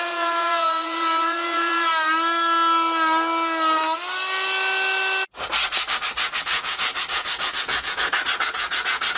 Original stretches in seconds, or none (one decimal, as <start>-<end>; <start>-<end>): 1.9-6.4